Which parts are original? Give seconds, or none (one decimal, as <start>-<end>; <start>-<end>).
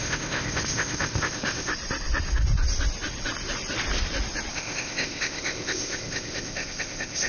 1.7-4.5